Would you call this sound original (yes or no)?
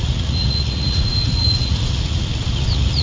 no